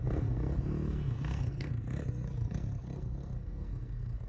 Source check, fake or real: fake